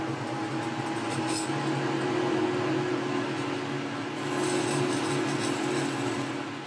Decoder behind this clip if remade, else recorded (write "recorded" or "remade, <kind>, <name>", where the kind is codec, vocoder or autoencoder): recorded